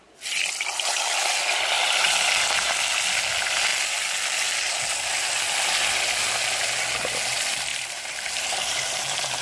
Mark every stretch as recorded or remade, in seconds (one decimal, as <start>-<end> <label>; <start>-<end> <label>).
0.0-7.7 recorded; 7.7-9.4 remade